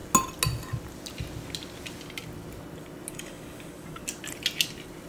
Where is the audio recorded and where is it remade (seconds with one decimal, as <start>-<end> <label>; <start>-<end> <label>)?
0.0-3.1 recorded; 3.1-4.0 remade; 4.0-5.1 recorded